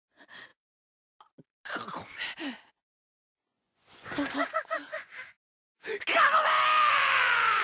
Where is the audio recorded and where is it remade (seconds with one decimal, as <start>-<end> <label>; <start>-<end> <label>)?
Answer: 0.0-0.5 remade; 0.5-2.7 recorded; 2.7-5.1 remade; 5.1-6.9 recorded; 6.9-7.6 remade